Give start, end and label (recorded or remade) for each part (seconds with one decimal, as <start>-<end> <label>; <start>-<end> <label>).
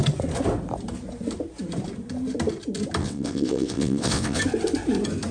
0.0-3.0 recorded; 3.0-4.4 remade; 4.4-5.3 recorded